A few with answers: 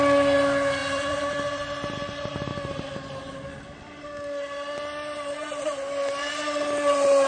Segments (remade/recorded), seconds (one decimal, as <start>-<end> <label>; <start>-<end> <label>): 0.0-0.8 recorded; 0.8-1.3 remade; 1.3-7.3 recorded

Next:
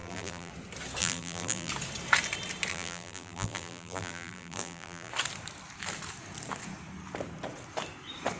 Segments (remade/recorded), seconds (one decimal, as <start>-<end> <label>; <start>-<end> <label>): 0.0-0.5 remade; 0.5-1.0 recorded; 1.0-1.7 remade; 1.7-2.7 recorded; 2.7-5.1 remade; 5.1-8.4 recorded

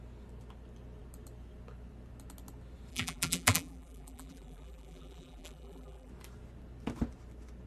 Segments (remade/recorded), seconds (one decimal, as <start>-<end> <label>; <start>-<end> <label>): 0.0-2.9 recorded; 2.9-6.1 remade; 6.1-7.7 recorded